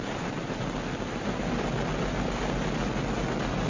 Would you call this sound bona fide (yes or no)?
yes